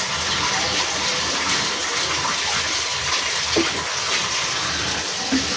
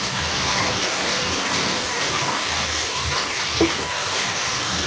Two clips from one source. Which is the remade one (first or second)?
second